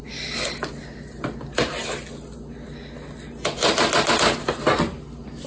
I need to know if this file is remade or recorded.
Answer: recorded